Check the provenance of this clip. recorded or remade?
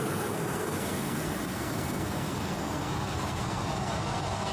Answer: remade